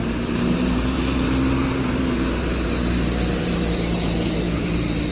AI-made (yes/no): yes